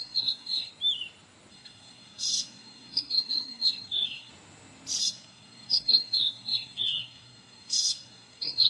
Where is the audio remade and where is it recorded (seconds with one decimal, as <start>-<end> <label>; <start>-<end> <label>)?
0.0-0.7 remade; 0.7-1.5 recorded; 1.5-4.3 remade; 4.3-5.0 recorded; 5.0-8.7 remade